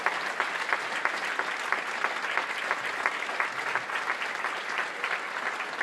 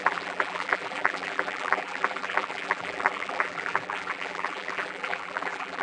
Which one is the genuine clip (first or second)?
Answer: first